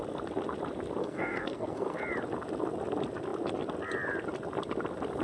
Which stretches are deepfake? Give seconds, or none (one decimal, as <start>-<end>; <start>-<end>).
1.0-2.0

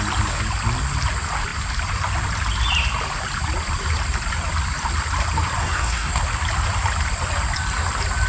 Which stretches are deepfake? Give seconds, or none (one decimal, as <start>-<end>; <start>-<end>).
5.6-6.2